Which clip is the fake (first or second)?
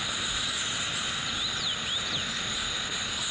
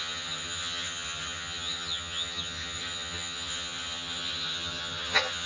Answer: second